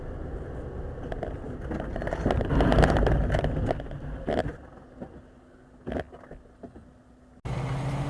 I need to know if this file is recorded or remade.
recorded